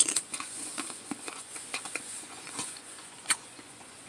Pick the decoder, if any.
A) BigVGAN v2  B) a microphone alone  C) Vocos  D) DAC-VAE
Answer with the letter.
C